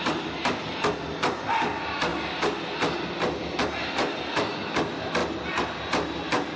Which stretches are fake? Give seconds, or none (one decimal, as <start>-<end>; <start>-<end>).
none